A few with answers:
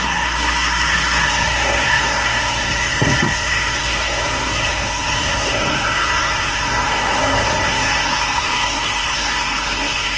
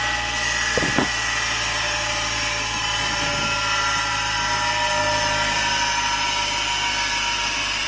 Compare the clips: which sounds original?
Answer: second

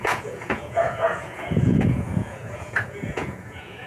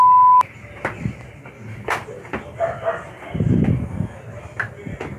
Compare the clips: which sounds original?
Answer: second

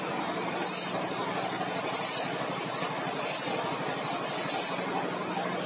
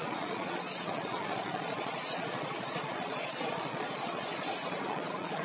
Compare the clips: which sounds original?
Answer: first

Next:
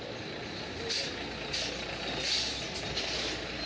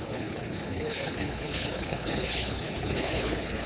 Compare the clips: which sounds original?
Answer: first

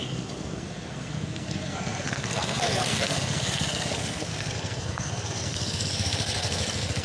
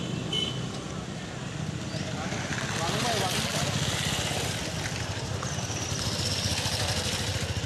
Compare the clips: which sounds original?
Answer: second